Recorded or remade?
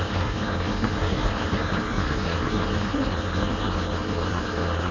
remade